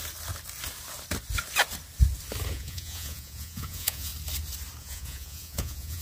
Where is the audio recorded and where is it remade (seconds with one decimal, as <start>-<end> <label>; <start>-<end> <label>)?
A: 0.0-2.5 recorded; 2.5-4.1 remade; 4.1-4.8 recorded; 4.8-6.0 remade